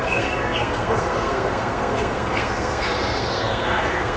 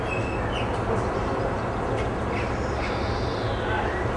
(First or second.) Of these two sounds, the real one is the second